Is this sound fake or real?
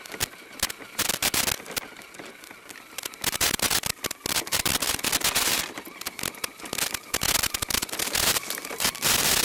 real